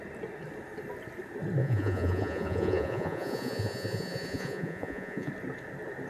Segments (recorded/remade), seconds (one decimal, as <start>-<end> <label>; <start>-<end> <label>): 0.0-1.6 recorded; 1.6-5.3 remade; 5.3-6.1 recorded